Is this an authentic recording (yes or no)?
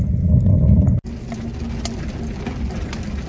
yes